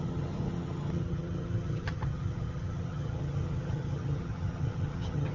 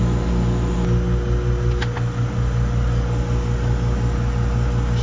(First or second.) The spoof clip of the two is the first